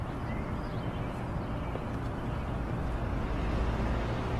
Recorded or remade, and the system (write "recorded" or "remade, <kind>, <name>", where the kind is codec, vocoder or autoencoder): recorded